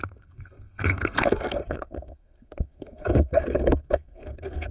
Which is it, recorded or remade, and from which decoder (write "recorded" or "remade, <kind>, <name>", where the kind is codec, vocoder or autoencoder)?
remade, codec, SNAC